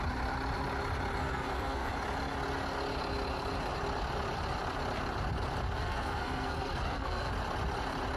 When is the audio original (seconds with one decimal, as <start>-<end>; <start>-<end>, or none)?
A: 0.0-1.2; 1.9-5.8; 7.3-8.2